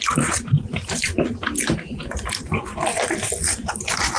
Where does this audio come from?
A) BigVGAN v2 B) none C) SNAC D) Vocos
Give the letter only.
A